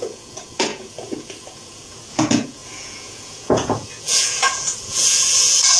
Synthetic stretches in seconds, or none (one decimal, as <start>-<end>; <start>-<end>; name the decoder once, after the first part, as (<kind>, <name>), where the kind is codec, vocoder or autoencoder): 0.0-5.8 (vocoder, Vocos)